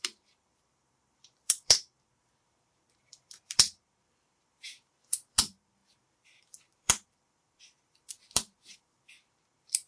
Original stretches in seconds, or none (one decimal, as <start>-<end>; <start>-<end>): none